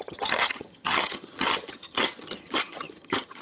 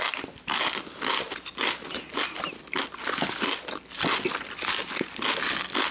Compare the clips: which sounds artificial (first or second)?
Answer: first